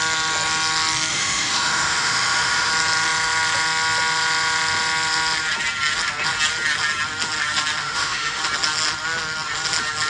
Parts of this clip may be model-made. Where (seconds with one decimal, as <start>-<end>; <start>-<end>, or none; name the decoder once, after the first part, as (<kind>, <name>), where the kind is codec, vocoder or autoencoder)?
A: 1.1-2.7 (autoencoder, DAC-VAE); 7.8-8.4